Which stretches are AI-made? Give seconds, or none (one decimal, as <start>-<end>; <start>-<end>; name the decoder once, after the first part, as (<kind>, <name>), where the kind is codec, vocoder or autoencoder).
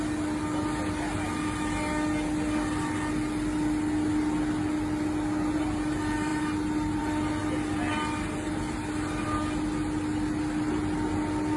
none